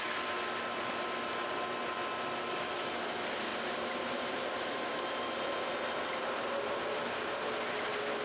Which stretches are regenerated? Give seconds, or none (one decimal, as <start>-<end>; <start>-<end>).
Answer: 3.5-5.3